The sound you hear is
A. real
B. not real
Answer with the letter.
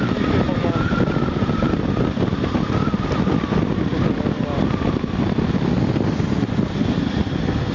A